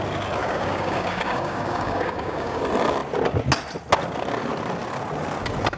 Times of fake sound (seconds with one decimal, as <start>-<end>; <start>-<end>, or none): 0.4-2.6